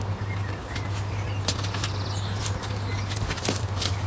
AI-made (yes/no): no